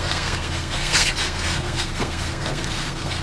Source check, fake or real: fake